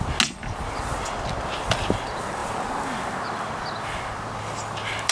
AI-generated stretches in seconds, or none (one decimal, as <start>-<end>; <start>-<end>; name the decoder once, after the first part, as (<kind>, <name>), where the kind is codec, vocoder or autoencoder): none